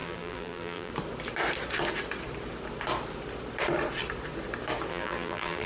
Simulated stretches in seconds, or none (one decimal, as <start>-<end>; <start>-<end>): 0.0-0.9; 4.9-5.7